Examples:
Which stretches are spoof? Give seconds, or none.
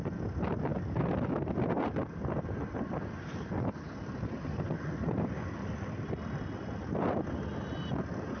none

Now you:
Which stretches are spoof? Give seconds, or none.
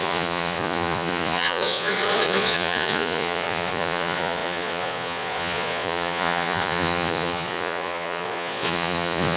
0.0-9.4 (vocoder, Vocos)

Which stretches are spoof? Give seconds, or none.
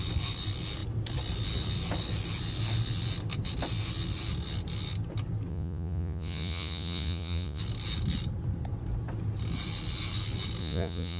5.5-7.6 (vocoder, Vocos); 10.6-11.2